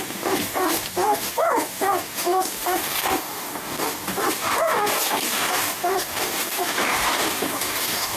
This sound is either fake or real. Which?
fake